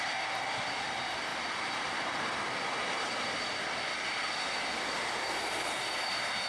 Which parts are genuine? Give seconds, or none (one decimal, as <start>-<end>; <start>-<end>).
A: 0.0-6.5